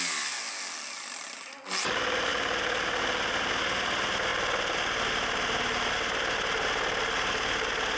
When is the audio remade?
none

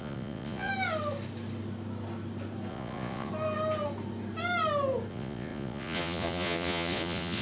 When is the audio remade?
0.0-0.7; 2.7-3.3; 5.1-7.4

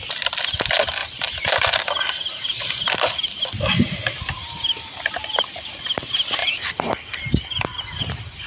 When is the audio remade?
1.0-3.4; 4.4-5.8; 6.4-7.8

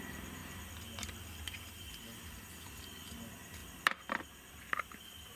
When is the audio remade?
none

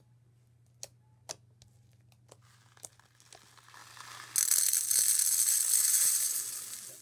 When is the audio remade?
none

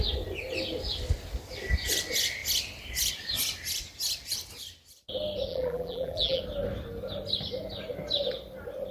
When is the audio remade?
5.5-6.4

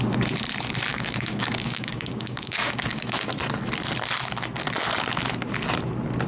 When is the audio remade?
0.9-3.3